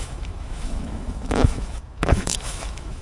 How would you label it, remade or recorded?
remade